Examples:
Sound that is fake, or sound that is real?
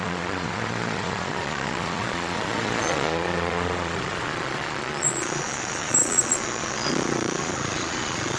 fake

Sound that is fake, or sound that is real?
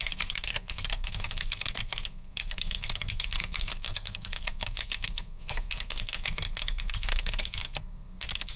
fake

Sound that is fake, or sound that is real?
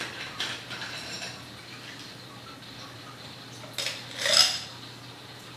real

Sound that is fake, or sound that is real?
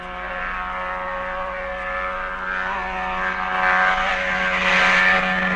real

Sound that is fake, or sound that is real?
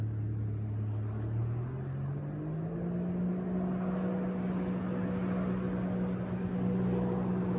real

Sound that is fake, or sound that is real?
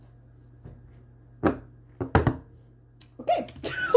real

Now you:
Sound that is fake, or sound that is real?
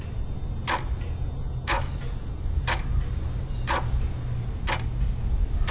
real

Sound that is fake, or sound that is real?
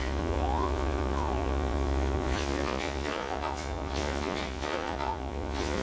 fake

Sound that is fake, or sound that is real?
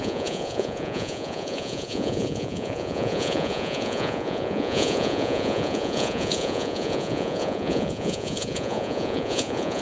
fake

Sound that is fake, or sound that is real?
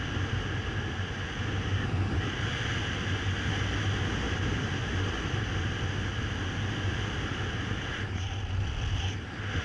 real